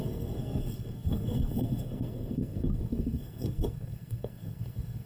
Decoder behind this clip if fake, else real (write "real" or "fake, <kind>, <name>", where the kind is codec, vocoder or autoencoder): fake, codec, SNAC